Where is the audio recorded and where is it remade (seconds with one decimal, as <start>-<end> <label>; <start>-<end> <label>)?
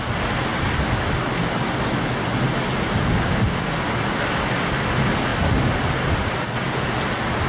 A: 0.0-7.5 recorded